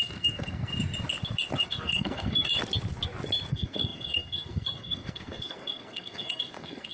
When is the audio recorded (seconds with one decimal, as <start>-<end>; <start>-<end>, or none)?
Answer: 0.7-1.6; 2.5-3.5